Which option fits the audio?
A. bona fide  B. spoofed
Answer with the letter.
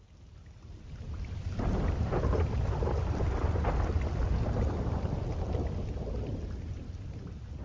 A